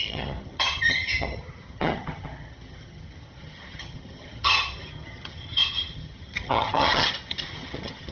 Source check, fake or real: fake